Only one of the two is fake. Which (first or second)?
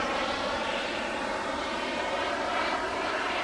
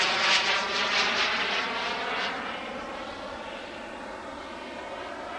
first